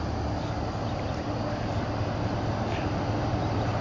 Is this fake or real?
real